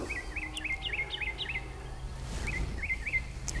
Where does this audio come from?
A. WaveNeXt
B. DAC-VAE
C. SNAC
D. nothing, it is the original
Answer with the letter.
D